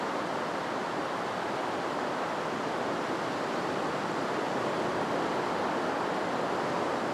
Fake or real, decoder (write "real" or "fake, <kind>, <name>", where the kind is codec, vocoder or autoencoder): real